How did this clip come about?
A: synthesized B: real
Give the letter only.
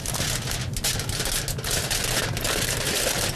B